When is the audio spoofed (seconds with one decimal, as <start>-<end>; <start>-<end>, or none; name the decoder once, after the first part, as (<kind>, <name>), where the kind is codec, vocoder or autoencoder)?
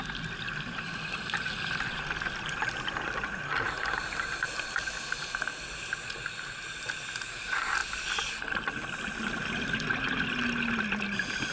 none